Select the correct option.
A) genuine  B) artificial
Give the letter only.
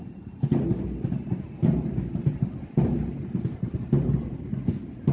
A